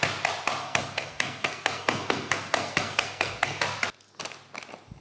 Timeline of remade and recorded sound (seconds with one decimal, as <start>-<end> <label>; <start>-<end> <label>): 0.0-0.6 recorded; 0.6-3.6 remade; 3.6-5.0 recorded